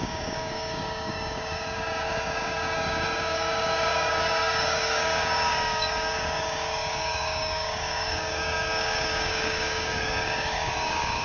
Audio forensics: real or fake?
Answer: fake